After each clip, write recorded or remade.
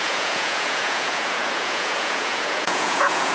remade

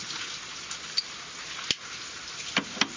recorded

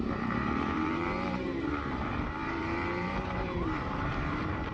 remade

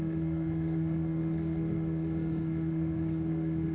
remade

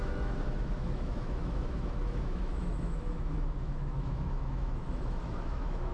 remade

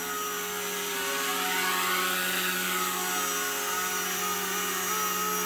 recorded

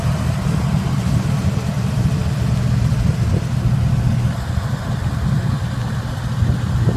recorded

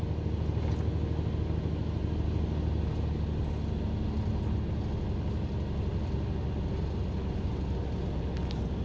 recorded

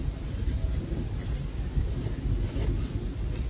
recorded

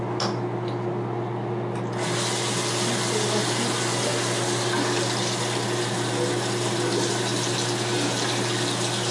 recorded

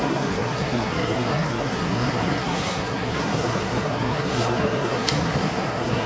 remade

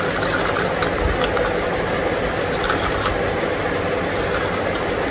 recorded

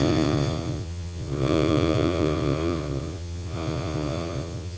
remade